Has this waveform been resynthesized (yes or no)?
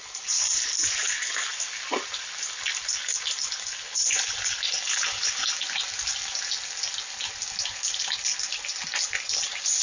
no